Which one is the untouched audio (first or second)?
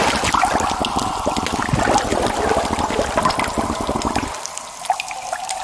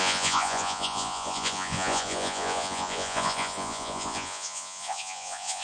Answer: first